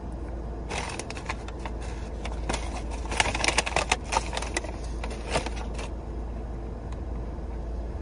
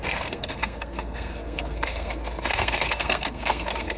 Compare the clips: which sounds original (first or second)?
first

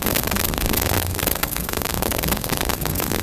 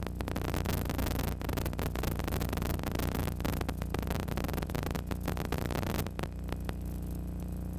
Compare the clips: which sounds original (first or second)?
second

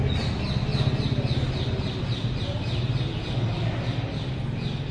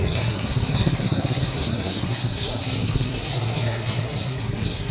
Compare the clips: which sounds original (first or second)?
first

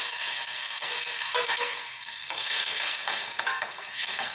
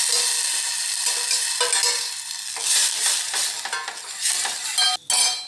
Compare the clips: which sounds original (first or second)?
second